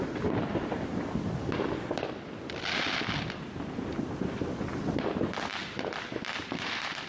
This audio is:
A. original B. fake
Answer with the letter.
A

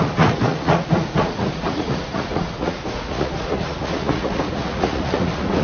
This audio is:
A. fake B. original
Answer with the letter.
A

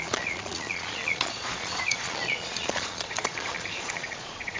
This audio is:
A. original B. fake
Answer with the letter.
B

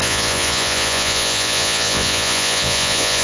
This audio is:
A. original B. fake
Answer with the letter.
B